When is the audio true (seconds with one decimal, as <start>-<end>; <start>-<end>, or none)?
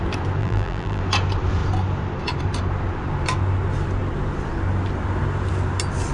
0.0-0.4; 1.0-6.1